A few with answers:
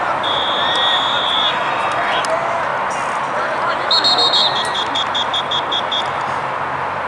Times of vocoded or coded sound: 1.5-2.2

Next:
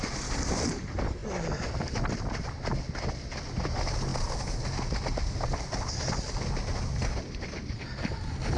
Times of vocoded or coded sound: none